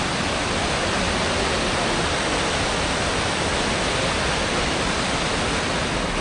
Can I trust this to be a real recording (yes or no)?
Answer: yes